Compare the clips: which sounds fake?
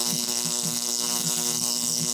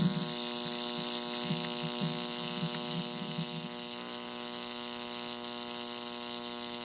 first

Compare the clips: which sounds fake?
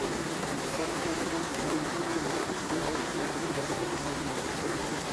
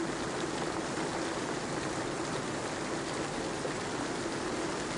first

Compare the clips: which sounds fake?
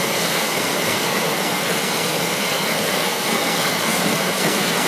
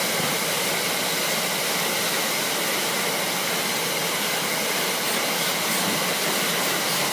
first